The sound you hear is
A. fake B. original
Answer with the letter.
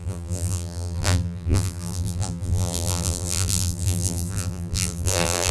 A